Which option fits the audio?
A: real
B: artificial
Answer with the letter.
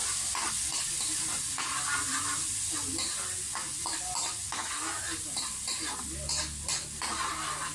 A